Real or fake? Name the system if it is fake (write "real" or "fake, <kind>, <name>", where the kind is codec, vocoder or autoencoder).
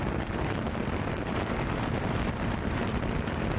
fake, vocoder, BigVGAN v2